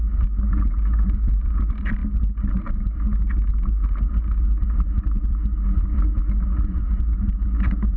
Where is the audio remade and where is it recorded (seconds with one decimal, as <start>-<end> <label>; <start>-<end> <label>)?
0.0-8.0 recorded